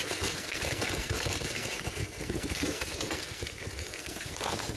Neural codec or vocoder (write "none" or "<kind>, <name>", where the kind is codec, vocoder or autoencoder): codec, SNAC